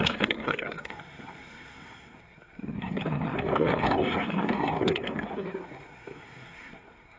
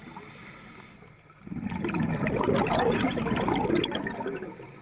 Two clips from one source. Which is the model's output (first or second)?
first